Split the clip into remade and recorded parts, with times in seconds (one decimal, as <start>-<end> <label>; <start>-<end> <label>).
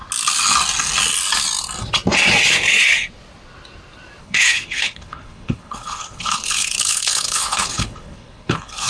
0.0-4.2 recorded; 4.2-8.9 remade